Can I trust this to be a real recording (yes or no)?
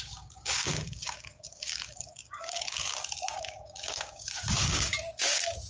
no